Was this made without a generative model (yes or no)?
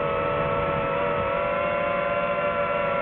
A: yes